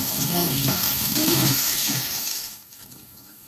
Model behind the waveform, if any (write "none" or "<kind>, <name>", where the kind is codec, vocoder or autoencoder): codec, DAC